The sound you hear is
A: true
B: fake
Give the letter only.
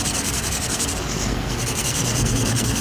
B